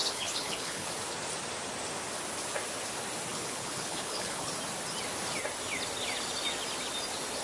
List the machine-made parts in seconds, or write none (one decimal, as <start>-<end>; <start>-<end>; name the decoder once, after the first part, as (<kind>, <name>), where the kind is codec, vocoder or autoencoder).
0.0-0.9 (codec, HILCodec); 3.3-4.5